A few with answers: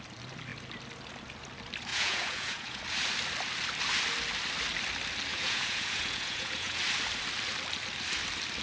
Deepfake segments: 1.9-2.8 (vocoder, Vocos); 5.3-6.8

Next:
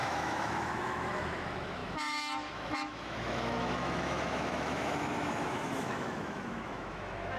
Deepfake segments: 0.0-7.4 (autoencoder, DAC-VAE)

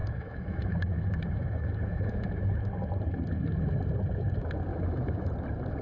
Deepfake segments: 0.0-2.6 (autoencoder, DAC-VAE); 4.7-5.3